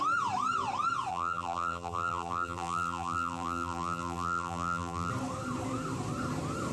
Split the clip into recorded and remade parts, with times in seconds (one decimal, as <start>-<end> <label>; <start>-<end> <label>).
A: 0.0-1.1 recorded; 1.1-5.1 remade; 5.1-6.7 recorded